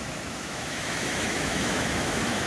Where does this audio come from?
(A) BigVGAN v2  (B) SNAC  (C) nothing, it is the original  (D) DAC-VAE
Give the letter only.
D